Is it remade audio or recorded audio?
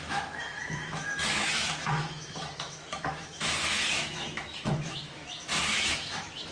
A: remade